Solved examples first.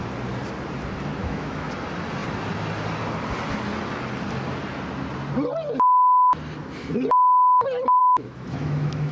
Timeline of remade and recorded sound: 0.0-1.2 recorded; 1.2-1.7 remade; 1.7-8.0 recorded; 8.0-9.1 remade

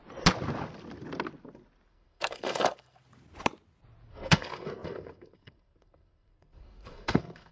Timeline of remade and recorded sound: 0.0-1.9 recorded; 1.9-3.0 remade; 3.0-4.1 recorded; 4.1-7.5 remade

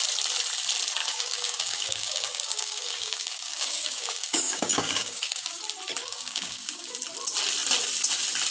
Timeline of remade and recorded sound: 0.0-1.0 recorded; 1.0-5.6 remade; 5.6-6.0 recorded; 6.0-6.9 remade; 6.9-8.5 recorded

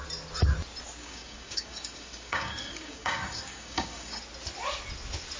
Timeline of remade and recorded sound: 0.0-1.0 recorded; 1.0-4.2 remade; 4.2-5.4 recorded